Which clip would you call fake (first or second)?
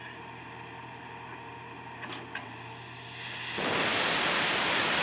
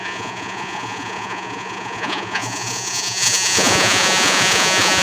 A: second